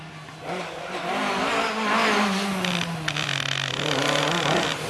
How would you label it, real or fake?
real